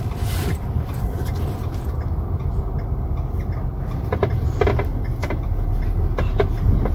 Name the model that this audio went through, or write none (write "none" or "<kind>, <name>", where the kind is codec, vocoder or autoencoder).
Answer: none